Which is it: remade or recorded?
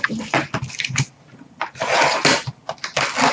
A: recorded